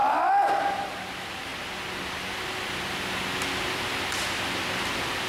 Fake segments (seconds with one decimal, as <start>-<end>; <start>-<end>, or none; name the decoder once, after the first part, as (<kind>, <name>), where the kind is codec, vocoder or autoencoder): none

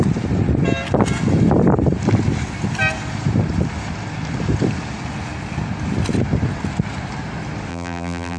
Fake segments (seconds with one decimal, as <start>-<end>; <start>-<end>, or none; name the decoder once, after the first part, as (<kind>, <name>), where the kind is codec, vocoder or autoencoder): 7.7-8.4 (vocoder, BigVGAN v2)

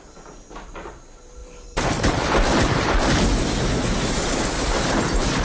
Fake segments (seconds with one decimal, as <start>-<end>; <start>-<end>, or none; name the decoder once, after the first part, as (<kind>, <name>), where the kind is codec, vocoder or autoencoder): 1.4-2.9 (vocoder, BigVGAN v2)